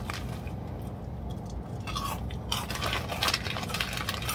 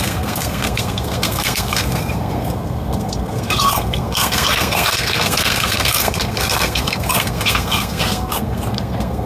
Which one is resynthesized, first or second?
second